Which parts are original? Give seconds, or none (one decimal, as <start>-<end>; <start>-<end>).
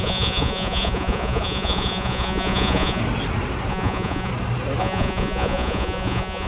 3.0-3.7; 4.3-4.8